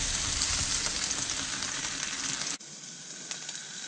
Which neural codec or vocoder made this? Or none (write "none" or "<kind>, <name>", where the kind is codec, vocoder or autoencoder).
none